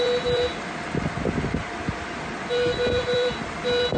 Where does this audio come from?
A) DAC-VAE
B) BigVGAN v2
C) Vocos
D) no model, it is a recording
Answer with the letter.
B